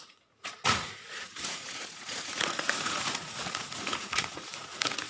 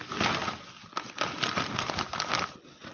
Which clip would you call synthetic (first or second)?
first